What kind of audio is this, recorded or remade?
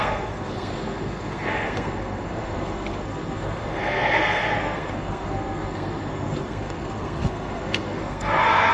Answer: remade